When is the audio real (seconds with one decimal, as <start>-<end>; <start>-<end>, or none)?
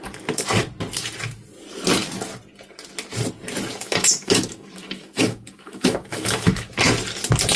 0.0-3.8; 6.7-7.6